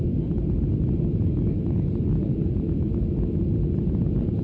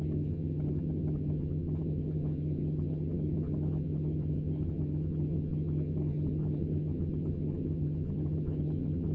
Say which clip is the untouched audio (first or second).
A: first